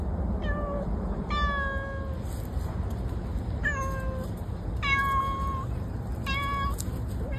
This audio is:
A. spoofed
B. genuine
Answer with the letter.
B